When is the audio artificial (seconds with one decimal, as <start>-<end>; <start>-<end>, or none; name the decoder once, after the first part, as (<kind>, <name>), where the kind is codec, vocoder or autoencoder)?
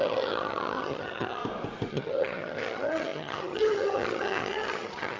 0.0-1.4 (vocoder, HiFi-GAN); 1.9-5.2